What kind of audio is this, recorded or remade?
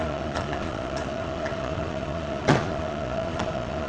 remade